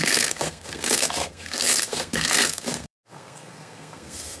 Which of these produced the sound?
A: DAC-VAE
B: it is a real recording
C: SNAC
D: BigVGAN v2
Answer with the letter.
C